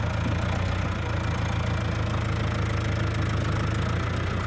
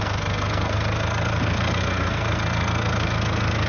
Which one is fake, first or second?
second